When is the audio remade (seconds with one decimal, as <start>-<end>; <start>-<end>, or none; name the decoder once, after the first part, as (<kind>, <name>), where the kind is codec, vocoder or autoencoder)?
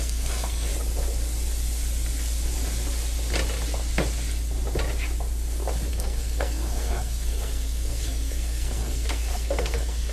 0.0-0.7 (codec, SNAC); 5.9-10.1